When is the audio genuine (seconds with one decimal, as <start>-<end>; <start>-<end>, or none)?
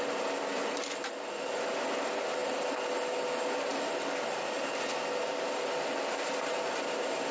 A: 0.0-7.3